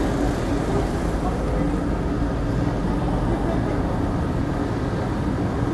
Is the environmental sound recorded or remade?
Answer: recorded